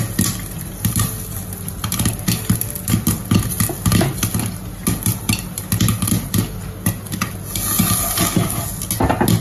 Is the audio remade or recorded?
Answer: recorded